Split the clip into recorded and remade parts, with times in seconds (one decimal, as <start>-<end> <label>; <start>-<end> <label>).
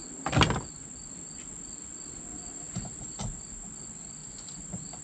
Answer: 0.0-2.3 recorded; 2.3-3.2 remade; 3.2-4.2 recorded; 4.2-5.0 remade